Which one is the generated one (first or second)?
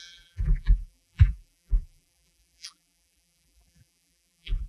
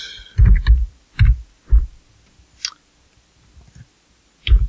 first